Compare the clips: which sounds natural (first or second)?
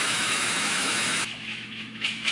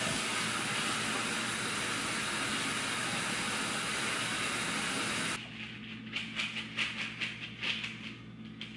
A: second